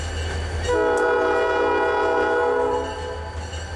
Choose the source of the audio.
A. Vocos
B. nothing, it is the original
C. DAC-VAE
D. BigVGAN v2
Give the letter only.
B